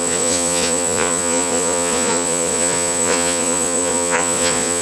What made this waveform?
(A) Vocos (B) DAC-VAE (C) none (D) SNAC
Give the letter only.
A